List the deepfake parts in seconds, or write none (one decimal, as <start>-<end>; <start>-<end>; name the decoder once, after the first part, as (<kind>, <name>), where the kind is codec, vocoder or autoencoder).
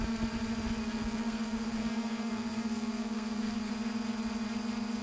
0.8-3.7 (codec, SNAC)